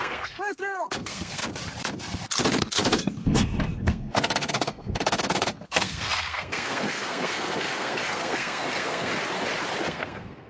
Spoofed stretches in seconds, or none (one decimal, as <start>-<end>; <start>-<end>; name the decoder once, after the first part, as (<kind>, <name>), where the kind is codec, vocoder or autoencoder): 0.0-1.4 (codec, SNAC); 2.6-9.1; 9.8-10.5

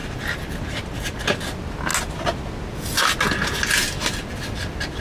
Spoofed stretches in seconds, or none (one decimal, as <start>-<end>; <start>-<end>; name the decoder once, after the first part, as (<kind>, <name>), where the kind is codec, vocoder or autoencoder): none

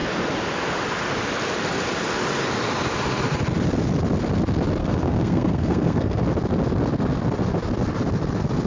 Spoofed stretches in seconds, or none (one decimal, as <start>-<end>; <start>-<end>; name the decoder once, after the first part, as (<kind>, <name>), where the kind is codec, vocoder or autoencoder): 4.8-6.2 (codec, SNAC)

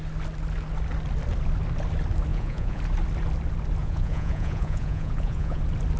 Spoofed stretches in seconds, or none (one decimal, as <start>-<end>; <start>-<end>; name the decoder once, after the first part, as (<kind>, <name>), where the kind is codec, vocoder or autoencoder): 2.3-2.8 (vocoder, Vocos); 3.8-5.6

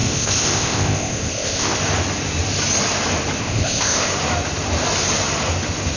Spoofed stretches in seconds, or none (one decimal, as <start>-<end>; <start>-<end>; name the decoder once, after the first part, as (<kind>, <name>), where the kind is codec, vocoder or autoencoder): 0.0-1.8 (codec, ZipCodec); 3.4-4.1

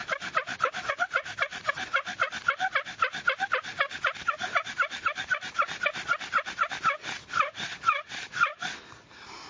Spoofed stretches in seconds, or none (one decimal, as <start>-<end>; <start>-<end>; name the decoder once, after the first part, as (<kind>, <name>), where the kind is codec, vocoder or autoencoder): none

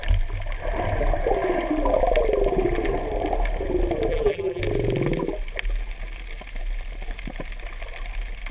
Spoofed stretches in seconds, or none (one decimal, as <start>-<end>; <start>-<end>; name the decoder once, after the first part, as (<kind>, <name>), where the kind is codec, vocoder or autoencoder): 4.1-4.6 (vocoder, BigVGAN v2)

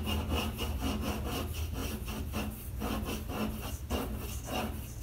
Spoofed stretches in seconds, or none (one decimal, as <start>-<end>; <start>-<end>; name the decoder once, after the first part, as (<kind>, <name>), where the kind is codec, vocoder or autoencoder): none